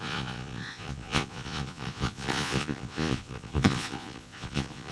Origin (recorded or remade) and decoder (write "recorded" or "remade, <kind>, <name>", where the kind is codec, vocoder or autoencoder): remade, vocoder, Vocos